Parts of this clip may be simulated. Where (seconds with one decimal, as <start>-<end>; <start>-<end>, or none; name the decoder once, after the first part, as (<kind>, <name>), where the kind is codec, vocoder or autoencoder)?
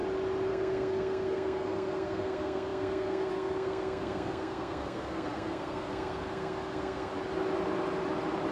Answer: 0.5-7.1 (codec, SNAC)